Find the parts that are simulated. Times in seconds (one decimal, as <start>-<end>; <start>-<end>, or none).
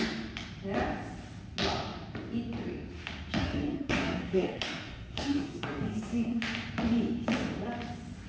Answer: 3.4-6.4